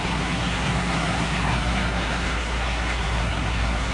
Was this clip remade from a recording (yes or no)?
yes